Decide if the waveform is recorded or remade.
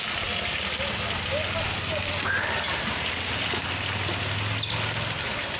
recorded